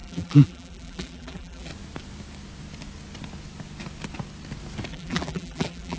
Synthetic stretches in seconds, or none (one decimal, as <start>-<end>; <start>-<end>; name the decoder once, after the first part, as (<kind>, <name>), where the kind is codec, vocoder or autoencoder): 0.0-1.7 (vocoder, BigVGAN v2); 4.9-6.0